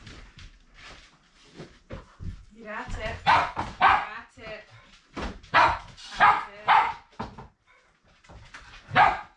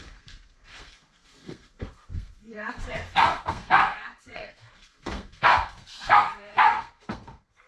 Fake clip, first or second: second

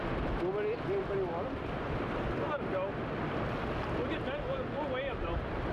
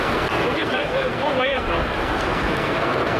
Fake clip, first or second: second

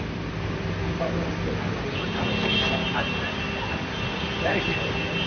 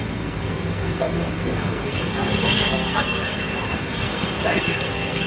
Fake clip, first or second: second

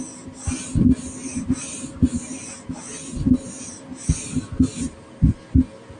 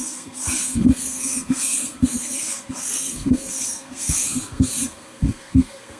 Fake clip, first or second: second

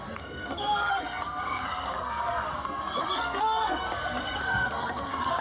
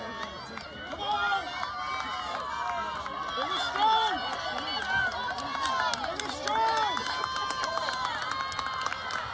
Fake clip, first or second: first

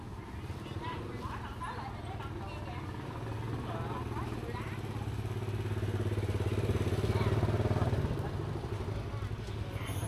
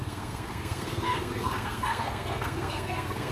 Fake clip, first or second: second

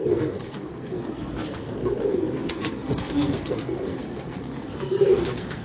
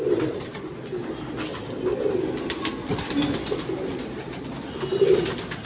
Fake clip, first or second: first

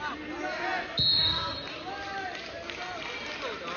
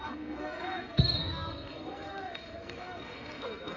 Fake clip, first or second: second